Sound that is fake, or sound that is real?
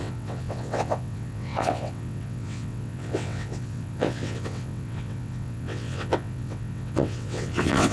fake